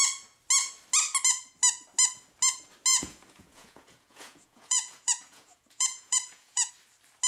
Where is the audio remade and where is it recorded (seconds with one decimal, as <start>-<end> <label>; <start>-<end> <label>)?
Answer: 0.0-2.9 recorded; 2.9-6.7 remade; 6.7-7.3 recorded